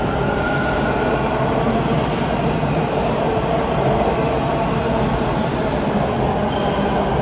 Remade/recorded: recorded